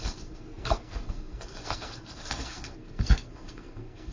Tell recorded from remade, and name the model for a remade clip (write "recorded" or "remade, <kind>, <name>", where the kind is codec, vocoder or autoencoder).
remade, codec, SNAC